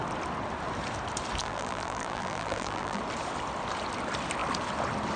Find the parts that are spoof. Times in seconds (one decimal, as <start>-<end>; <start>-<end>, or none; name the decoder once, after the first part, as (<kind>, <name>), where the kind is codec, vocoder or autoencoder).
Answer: 1.4-3.0 (vocoder, BigVGAN v2)